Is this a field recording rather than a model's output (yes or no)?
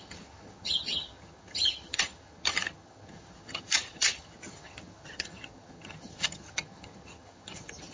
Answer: no